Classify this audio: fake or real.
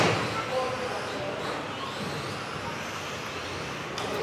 real